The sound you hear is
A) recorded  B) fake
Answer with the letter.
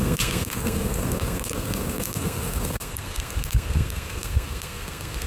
B